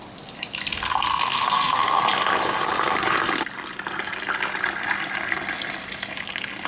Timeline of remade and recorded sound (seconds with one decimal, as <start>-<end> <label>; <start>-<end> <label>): 0.0-1.1 recorded; 1.1-2.0 remade; 2.0-6.7 recorded